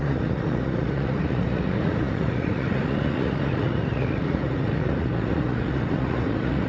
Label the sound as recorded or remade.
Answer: remade